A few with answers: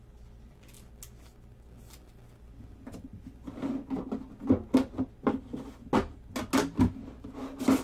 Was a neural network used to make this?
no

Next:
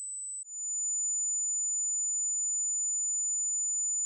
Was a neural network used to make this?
no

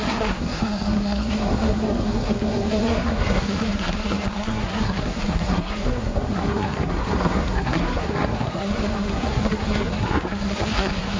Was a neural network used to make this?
yes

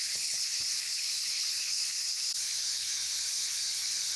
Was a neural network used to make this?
yes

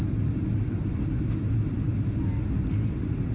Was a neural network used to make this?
no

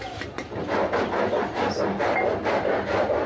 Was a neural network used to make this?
no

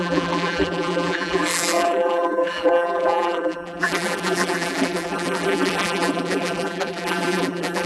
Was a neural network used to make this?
yes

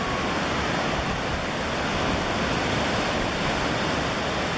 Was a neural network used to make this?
no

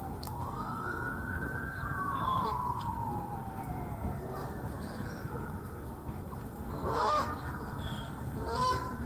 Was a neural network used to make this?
yes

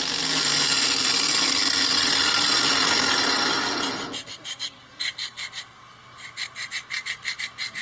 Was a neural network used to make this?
no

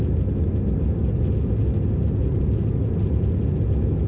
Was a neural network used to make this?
no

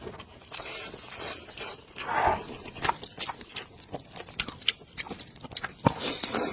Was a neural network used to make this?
no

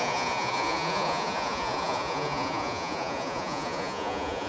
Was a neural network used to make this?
yes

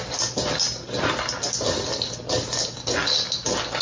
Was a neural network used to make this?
no